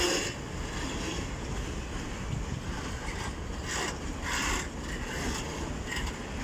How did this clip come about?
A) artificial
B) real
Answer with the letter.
B